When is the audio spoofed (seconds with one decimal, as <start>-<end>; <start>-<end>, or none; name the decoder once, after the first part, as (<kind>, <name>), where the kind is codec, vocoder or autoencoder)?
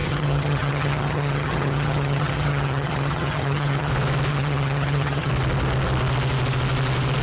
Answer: 0.0-3.9 (vocoder, HiFi-GAN); 4.3-5.3